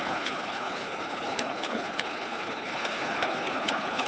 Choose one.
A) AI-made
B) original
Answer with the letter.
A